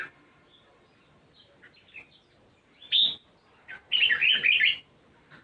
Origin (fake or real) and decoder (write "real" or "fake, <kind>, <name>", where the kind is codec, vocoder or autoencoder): real